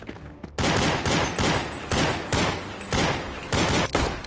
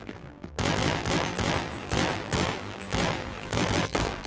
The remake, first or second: second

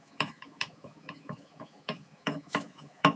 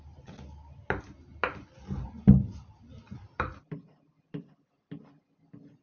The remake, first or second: first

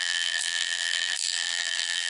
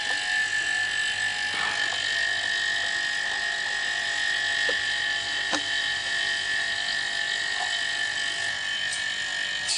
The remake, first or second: first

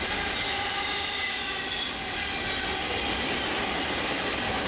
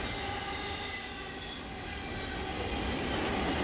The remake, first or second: first